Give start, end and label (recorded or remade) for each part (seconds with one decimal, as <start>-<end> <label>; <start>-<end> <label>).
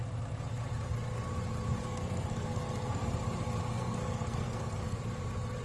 0.0-1.8 recorded; 1.8-3.0 remade; 3.0-3.6 recorded; 3.6-5.0 remade; 5.0-5.6 recorded